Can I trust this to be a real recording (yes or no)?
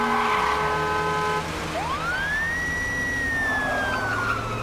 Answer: yes